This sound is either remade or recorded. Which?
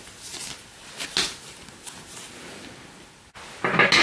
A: recorded